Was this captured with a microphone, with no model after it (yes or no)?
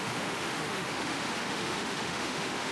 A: no